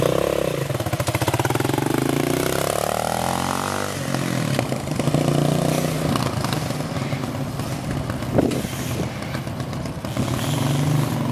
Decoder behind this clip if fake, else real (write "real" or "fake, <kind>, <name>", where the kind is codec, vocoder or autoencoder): real